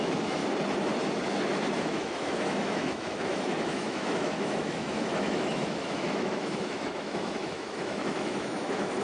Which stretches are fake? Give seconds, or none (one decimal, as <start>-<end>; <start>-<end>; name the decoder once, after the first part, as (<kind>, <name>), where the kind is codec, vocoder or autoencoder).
0.0-0.4 (autoencoder, DAC-VAE); 1.8-9.0